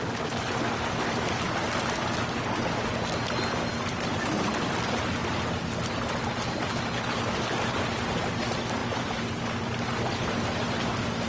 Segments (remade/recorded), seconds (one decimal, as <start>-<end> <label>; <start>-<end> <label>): 0.0-11.3 recorded